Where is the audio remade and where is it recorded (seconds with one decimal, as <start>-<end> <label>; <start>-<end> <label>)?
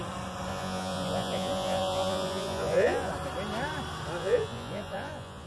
0.0-0.5 recorded; 0.5-3.1 remade; 3.1-4.2 recorded; 4.2-5.5 remade